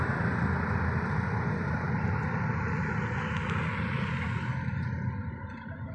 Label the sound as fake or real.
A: real